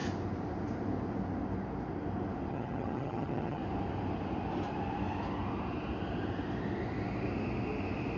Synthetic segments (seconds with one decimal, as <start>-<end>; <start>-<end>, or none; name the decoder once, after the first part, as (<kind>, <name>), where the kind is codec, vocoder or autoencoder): 2.5-3.6 (vocoder, HiFi-GAN)